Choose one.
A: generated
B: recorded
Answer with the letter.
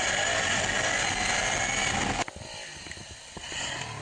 B